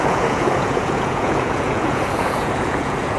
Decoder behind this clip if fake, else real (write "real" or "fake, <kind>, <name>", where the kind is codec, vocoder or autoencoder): fake, vocoder, Vocos